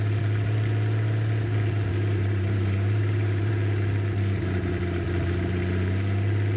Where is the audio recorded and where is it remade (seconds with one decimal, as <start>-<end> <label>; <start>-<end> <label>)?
0.0-1.9 recorded; 1.9-3.5 remade; 3.5-6.6 recorded